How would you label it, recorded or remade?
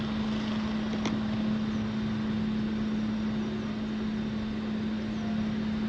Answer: recorded